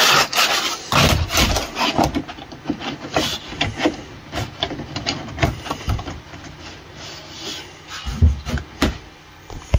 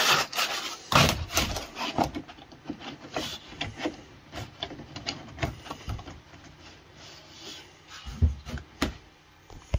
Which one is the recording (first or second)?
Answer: first